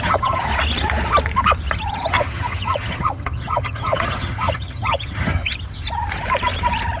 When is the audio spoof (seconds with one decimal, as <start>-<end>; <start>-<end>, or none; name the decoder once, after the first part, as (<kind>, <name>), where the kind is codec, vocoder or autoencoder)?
0.0-0.5 (vocoder, HiFi-GAN); 1.9-5.3